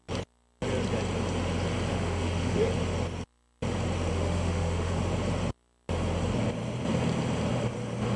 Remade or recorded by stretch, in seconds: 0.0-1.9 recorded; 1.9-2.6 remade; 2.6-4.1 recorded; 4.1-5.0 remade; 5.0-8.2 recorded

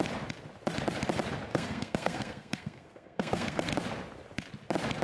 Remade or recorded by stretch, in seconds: 0.0-1.5 recorded; 1.5-3.7 remade; 3.7-5.0 recorded

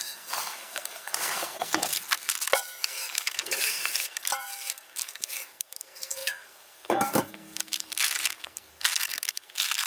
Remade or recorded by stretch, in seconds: 0.0-9.9 remade

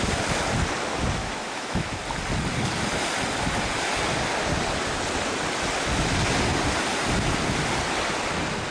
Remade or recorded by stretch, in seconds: 0.0-1.2 recorded; 1.2-2.0 remade; 2.0-8.7 recorded

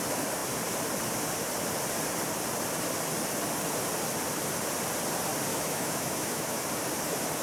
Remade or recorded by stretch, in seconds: 0.0-5.5 recorded; 5.5-6.6 remade; 6.6-7.4 recorded

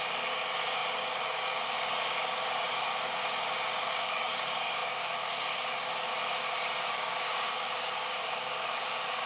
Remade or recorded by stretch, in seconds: 0.0-3.2 remade; 3.2-3.9 recorded; 3.9-6.1 remade; 6.1-6.9 recorded; 6.9-9.3 remade

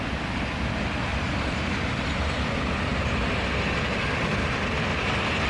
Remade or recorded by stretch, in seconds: 0.0-1.1 recorded; 1.1-2.0 remade; 2.0-4.9 recorded; 4.9-5.5 remade